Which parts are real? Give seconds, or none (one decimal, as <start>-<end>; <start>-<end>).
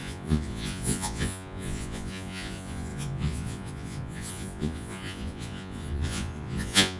none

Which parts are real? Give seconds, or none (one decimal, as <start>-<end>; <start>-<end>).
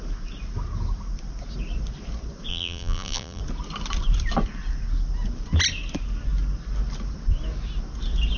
0.0-2.5; 3.4-8.4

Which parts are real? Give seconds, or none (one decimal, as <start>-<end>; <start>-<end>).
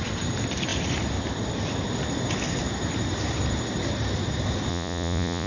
0.0-4.7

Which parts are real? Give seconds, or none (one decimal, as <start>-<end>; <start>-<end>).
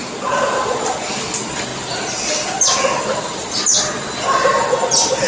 0.0-5.3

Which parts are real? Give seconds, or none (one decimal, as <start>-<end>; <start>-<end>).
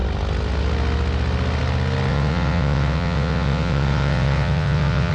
0.0-2.1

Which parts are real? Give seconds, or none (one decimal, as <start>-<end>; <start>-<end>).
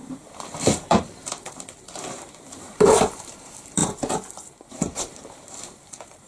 none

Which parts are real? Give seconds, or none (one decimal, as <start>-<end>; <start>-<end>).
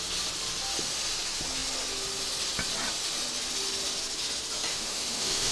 0.0-4.7